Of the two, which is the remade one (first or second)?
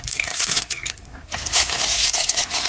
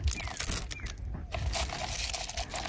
first